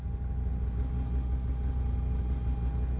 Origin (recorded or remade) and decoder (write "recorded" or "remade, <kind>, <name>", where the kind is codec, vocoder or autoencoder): recorded